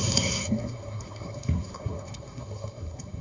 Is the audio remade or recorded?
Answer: remade